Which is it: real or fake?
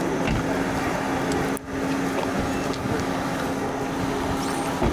real